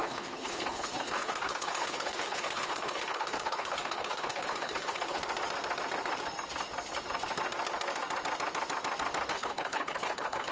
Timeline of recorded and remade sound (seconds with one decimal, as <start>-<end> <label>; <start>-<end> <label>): 0.0-5.2 remade; 5.2-9.3 recorded; 9.3-10.5 remade